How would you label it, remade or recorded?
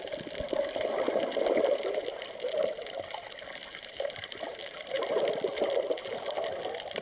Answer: recorded